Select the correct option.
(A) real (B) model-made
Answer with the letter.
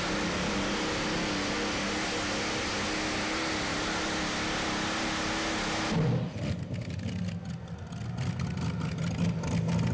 A